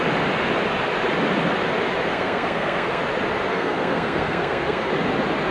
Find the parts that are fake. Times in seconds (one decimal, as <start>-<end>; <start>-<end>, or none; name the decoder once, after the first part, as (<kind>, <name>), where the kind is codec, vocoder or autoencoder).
2.1-3.0 (codec, SNAC); 3.5-4.9